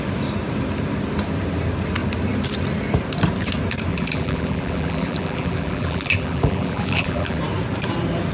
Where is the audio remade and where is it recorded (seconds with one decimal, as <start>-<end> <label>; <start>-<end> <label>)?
0.0-3.9 recorded; 3.9-7.4 remade; 7.4-8.3 recorded